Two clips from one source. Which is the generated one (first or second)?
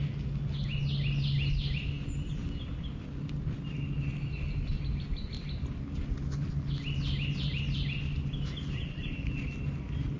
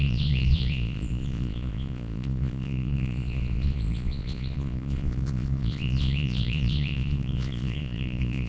second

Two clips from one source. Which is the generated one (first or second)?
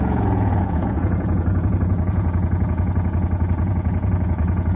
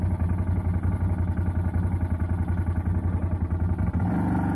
first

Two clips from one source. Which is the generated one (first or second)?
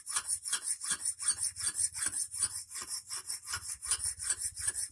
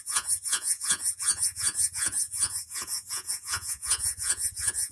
second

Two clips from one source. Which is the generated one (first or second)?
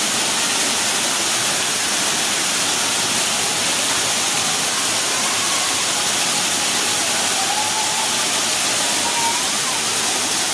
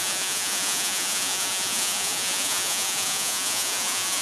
second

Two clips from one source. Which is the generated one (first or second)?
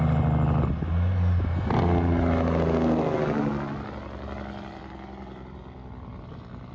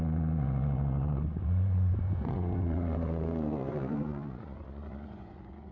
second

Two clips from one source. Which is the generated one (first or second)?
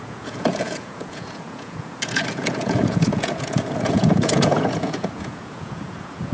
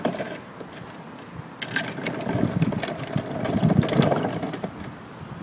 first